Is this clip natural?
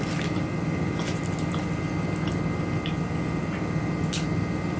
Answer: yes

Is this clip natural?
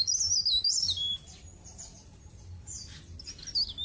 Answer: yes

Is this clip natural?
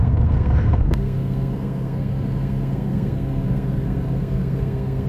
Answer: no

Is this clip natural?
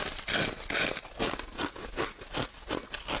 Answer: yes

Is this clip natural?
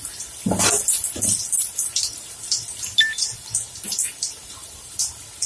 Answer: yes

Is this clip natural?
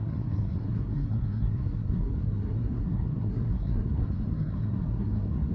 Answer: no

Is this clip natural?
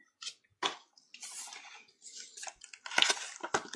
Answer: yes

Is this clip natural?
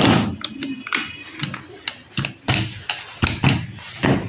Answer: yes